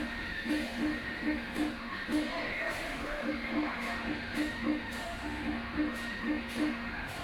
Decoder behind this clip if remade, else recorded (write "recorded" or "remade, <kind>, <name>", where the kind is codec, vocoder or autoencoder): remade, autoencoder, DAC-VAE